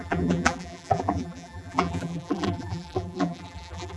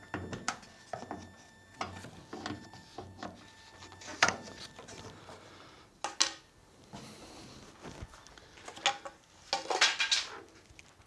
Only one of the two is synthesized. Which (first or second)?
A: first